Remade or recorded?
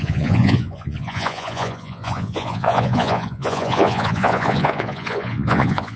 remade